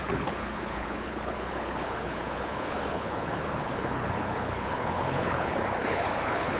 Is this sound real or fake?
fake